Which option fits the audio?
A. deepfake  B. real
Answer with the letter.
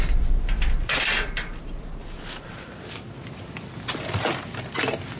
B